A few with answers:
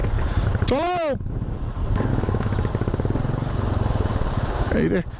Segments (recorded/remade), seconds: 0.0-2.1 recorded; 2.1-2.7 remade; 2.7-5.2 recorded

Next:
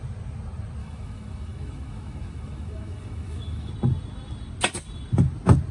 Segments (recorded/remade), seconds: 0.0-0.8 recorded; 0.8-3.7 remade; 3.7-5.7 recorded

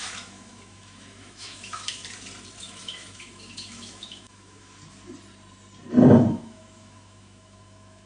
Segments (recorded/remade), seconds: 0.0-2.0 remade; 2.0-2.6 recorded; 2.6-4.8 remade; 4.8-6.3 recorded; 6.3-8.1 remade

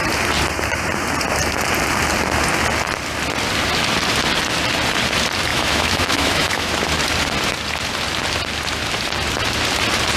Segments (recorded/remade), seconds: 0.0-5.5 recorded; 5.5-6.7 remade; 6.7-10.2 recorded

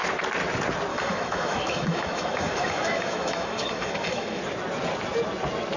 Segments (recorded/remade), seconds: 0.0-0.9 recorded; 0.9-4.4 remade; 4.4-5.8 recorded

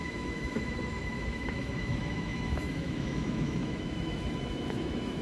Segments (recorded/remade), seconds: 0.0-5.2 remade

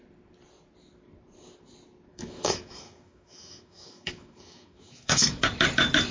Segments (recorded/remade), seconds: 0.0-2.1 recorded; 2.1-5.4 remade; 5.4-6.1 recorded

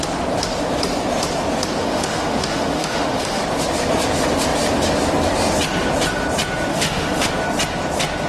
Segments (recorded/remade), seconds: 0.0-1.8 recorded; 1.8-3.4 remade; 3.4-6.7 recorded; 6.7-7.3 remade; 7.3-8.3 recorded